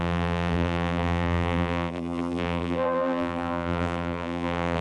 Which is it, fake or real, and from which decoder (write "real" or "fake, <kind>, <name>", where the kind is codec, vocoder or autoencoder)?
fake, vocoder, BigVGAN v2